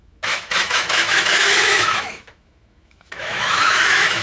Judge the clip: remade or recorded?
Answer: remade